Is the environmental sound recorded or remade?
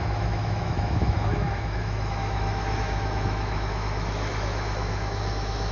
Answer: remade